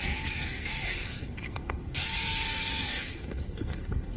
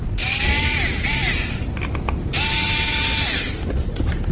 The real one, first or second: second